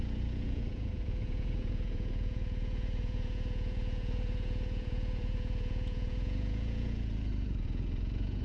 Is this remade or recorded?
remade